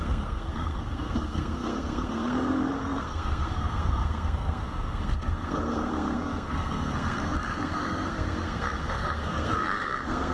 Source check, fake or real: fake